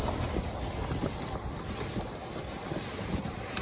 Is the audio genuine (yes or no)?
yes